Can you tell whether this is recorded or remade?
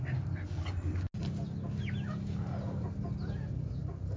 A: recorded